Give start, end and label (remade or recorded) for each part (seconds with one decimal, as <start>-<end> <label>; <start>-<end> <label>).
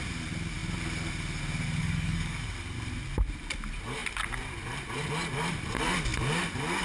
0.0-1.8 recorded; 1.8-2.4 remade; 2.4-6.8 recorded